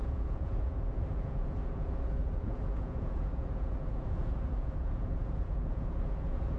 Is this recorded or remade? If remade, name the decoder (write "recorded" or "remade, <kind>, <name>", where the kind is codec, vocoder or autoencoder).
remade, vocoder, Vocos